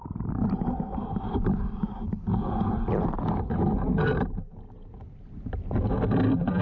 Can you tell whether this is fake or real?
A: real